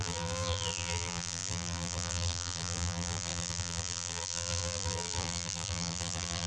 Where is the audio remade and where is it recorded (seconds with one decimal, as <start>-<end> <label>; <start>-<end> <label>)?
0.0-6.5 remade